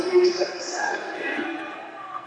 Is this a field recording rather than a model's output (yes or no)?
no